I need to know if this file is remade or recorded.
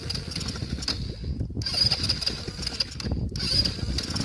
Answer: recorded